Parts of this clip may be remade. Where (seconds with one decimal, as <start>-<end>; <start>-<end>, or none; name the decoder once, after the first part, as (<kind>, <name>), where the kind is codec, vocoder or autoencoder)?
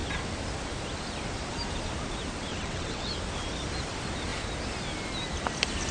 2.5-3.1 (vocoder, WaveNeXt)